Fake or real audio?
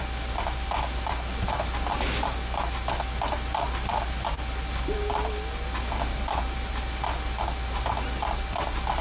real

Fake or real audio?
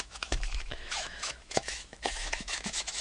fake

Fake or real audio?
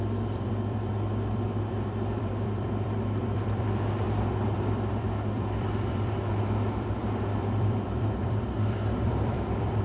fake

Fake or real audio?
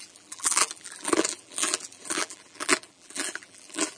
fake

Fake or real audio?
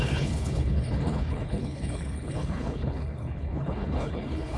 fake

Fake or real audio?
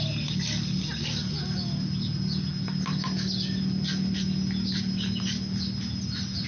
real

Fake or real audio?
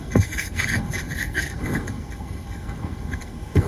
fake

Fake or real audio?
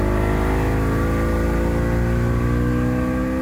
real